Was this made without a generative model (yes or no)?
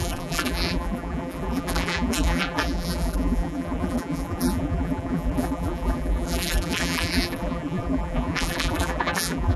no